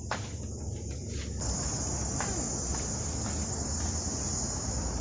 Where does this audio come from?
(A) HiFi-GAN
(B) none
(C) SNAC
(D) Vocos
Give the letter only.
B